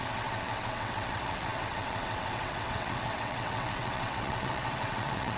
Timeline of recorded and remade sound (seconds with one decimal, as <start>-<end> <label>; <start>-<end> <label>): 0.0-5.4 remade